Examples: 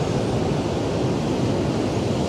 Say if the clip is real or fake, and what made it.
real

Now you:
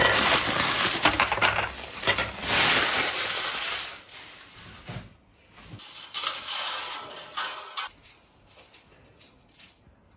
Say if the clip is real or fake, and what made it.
real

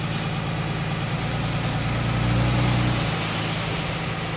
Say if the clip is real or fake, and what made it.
real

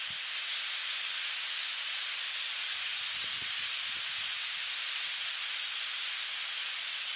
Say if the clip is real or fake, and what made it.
real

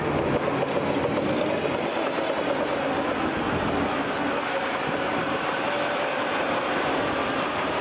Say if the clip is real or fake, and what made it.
real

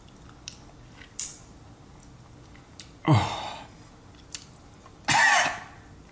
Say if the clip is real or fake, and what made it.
real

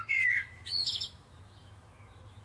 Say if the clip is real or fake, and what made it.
fake, autoencoder, DAC-VAE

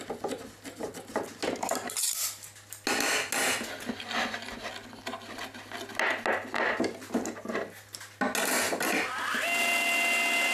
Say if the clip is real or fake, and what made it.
real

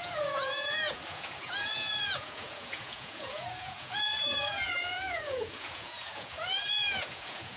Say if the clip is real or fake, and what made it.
fake, vocoder, Vocos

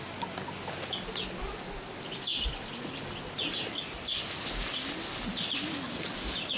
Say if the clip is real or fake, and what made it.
real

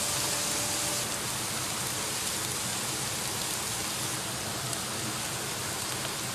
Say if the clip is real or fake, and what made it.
real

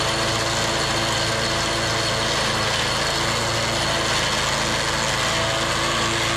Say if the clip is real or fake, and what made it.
real